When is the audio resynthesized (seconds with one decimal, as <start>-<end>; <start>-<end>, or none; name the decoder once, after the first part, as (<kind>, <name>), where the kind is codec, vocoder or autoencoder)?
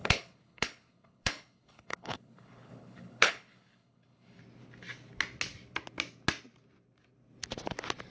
0.0-4.4 (codec, HILCodec)